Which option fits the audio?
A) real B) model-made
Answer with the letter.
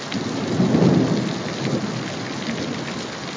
A